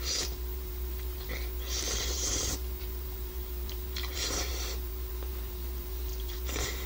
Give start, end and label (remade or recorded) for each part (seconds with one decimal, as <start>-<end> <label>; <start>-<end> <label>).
0.0-6.9 remade